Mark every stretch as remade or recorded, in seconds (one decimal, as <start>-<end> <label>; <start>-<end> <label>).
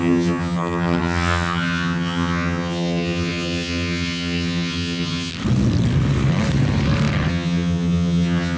0.0-5.3 remade; 5.3-7.3 recorded; 7.3-8.6 remade